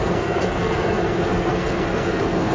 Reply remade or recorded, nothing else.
remade